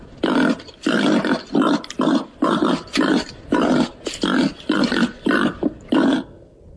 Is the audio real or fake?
fake